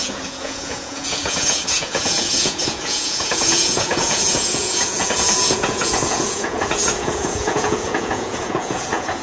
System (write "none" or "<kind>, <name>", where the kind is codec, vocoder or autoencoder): vocoder, Vocos